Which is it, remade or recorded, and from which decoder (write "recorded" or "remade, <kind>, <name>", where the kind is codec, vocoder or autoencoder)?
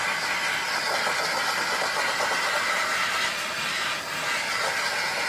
recorded